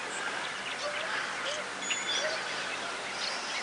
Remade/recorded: recorded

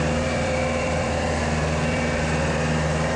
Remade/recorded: remade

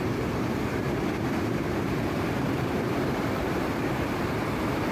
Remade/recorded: remade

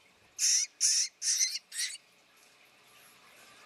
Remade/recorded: recorded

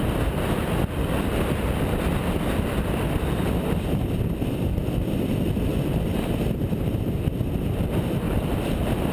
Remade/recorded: remade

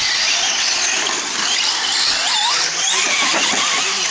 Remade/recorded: recorded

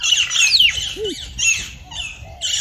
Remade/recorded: recorded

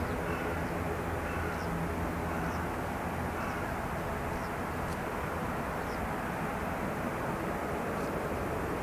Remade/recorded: recorded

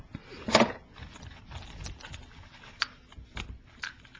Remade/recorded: recorded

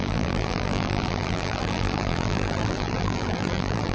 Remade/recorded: remade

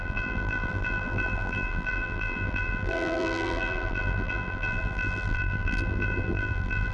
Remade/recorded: remade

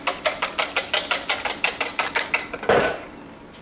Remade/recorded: recorded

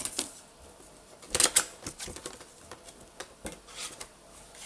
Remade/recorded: recorded